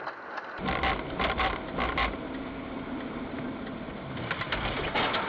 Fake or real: real